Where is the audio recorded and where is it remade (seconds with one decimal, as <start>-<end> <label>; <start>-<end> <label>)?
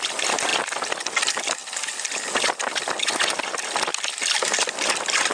0.0-5.3 recorded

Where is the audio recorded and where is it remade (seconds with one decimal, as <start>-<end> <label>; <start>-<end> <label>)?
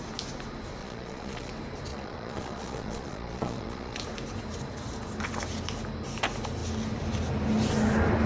0.0-0.8 recorded; 0.8-1.5 remade; 1.5-1.9 recorded; 1.9-4.0 remade; 4.0-8.3 recorded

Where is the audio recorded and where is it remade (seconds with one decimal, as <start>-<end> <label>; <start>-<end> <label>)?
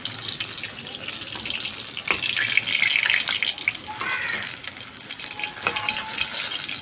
0.0-6.8 recorded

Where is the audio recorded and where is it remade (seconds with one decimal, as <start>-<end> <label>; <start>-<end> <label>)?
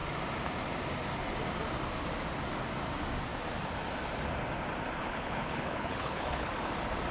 0.0-5.0 recorded; 5.0-6.5 remade; 6.5-7.1 recorded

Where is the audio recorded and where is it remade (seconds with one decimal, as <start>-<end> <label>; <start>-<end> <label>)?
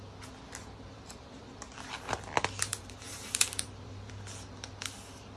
0.0-0.9 recorded; 0.9-1.5 remade; 1.5-2.7 recorded; 2.7-4.1 remade; 4.1-5.4 recorded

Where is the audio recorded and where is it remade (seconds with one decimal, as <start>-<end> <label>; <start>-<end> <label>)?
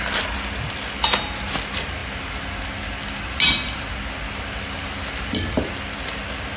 0.0-6.6 recorded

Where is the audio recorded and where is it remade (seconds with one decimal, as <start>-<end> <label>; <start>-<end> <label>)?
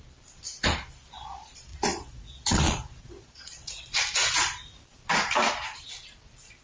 0.0-1.7 recorded; 1.7-4.0 remade; 4.0-6.6 recorded